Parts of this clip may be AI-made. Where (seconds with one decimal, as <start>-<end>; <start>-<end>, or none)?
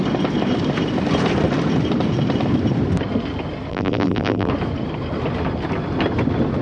3.7-4.5